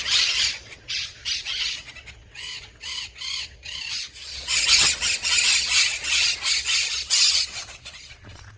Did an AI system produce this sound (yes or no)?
yes